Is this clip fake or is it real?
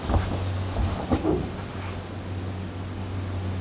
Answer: real